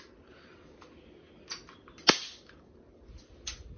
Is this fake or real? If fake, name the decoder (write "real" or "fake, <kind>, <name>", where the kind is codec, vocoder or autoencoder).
real